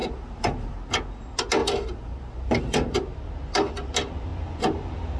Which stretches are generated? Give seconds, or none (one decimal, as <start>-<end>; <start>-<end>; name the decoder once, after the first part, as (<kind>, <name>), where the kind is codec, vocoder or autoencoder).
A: 0.0-0.7 (vocoder, BigVGAN v2); 1.6-3.3